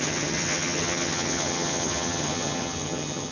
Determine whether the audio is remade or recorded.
remade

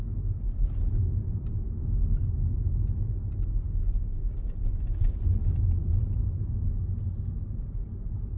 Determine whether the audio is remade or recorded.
recorded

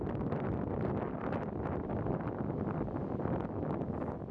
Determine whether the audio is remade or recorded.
recorded